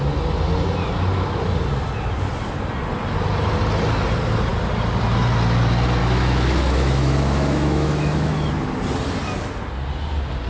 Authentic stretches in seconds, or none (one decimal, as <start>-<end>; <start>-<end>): 0.0-6.0; 8.5-10.5